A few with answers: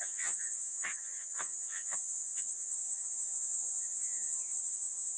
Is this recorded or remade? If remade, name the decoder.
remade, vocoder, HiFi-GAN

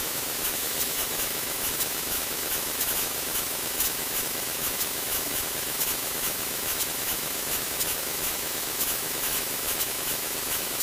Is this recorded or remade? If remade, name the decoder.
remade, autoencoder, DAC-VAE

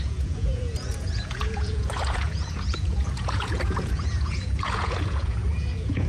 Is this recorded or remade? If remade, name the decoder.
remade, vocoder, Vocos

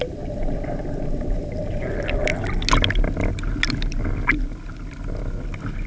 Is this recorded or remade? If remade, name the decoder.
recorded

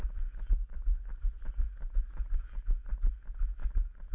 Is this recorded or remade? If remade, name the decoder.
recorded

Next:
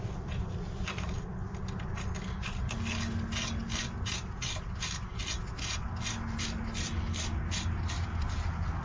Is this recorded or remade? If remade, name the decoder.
recorded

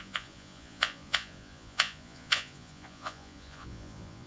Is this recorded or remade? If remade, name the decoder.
remade, vocoder, Vocos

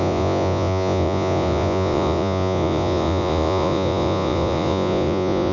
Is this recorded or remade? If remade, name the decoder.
remade, vocoder, Vocos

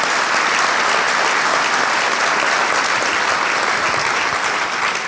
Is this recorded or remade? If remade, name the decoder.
recorded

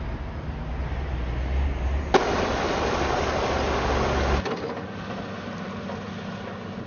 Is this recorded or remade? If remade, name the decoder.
recorded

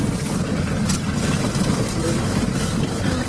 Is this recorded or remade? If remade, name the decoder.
recorded